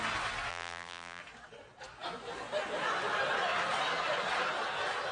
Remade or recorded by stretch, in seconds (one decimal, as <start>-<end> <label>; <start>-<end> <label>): 0.0-0.5 recorded; 0.5-1.2 remade; 1.2-5.1 recorded